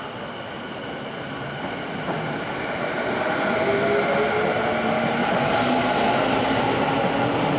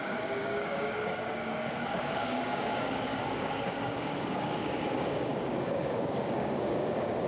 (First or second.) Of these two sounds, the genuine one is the first